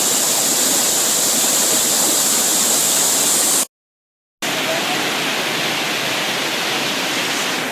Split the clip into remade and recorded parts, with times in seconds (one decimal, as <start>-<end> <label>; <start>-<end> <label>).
0.0-7.7 recorded